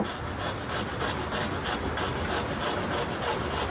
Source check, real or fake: real